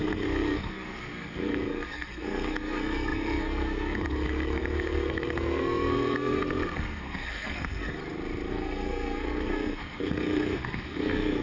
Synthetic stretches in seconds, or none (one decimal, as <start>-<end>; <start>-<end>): 0.0-7.9; 8.5-11.4

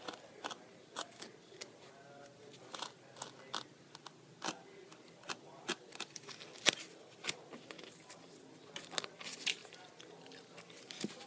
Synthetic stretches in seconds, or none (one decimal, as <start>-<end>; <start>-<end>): none